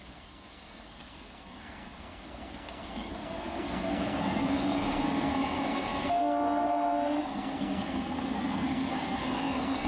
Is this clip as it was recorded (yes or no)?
no